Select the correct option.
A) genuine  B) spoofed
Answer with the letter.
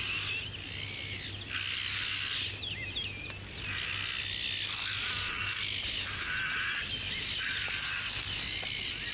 A